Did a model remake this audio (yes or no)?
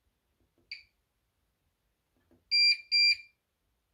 no